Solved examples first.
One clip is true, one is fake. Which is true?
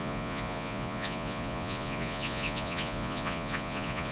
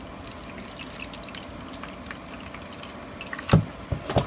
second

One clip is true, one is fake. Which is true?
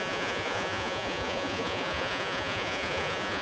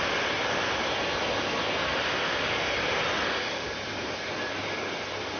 second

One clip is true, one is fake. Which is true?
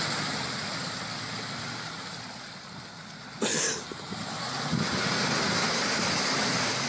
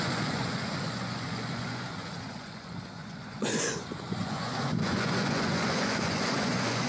first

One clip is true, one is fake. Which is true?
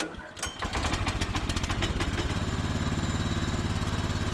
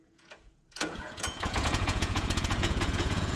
first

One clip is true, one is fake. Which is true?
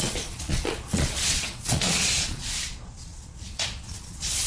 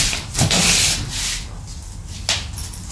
second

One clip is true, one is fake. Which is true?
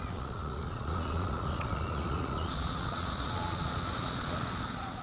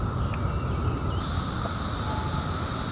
second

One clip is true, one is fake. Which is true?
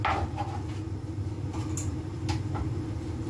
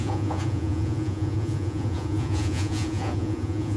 first